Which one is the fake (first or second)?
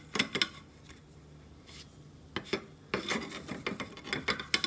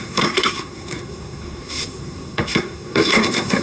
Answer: second